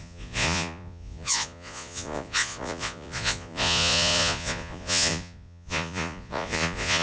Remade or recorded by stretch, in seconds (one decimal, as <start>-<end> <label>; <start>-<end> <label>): 0.0-7.0 remade